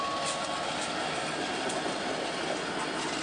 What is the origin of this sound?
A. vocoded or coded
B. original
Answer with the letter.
B